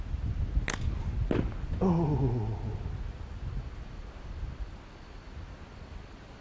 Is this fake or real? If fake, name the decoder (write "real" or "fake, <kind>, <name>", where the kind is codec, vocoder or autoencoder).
real